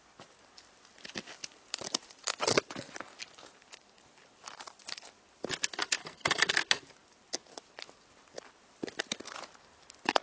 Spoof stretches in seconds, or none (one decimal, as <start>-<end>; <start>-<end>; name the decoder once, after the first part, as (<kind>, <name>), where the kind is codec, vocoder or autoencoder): 6.0-6.5 (codec, SNAC)